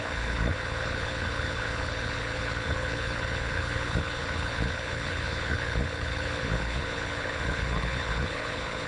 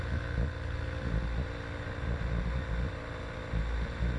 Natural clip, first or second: second